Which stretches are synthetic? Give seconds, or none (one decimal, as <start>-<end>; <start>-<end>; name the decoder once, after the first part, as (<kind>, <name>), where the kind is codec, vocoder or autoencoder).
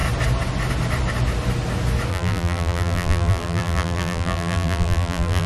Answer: 2.1-5.5 (vocoder, BigVGAN v2)